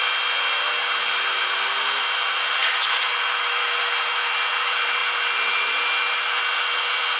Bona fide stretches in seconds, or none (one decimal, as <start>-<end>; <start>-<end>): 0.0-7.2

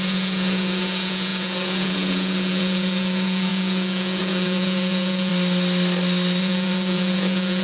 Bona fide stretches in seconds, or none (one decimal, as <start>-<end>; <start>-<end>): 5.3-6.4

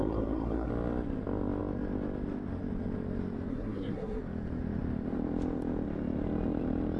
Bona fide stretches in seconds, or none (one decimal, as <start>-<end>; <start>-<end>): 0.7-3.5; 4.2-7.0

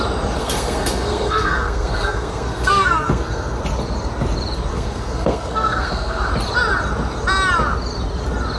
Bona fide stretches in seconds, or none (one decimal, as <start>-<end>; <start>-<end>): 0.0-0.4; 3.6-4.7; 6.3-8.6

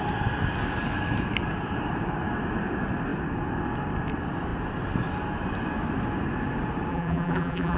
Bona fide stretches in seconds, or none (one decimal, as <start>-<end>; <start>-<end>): 0.0-6.9

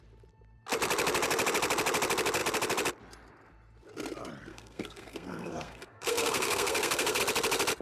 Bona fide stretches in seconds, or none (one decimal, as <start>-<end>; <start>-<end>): 0.0-4.5; 7.2-7.8